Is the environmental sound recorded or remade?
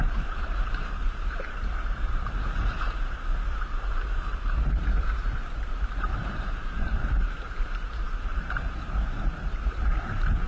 remade